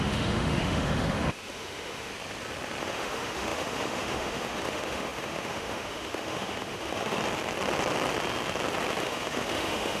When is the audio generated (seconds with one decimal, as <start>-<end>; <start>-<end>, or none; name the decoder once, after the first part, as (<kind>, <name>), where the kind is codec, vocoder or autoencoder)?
0.0-2.1 (autoencoder, DAC-VAE); 2.8-7.2; 9.0-10.0